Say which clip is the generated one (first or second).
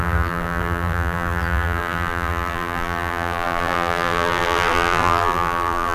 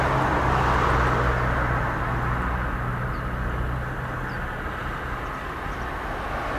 first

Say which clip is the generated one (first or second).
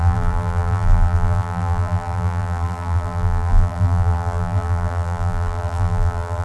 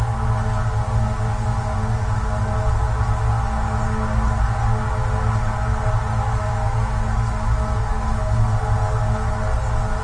first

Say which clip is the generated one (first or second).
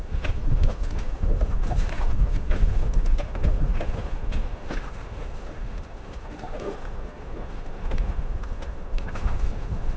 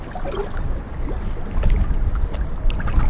first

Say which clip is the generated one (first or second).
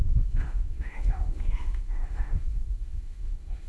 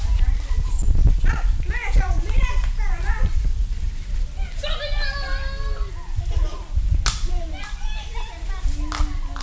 first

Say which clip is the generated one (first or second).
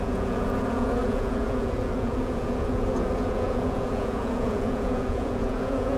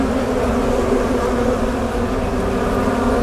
first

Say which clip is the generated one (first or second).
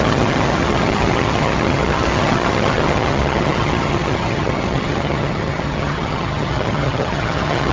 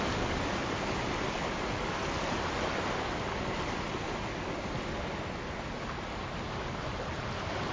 first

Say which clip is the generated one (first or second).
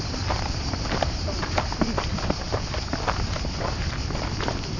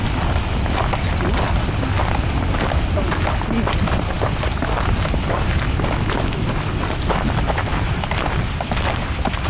first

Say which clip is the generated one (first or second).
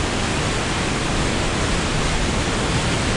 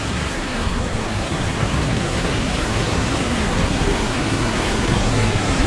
second